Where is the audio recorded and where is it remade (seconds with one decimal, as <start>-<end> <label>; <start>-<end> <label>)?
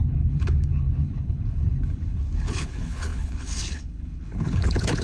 0.0-5.0 remade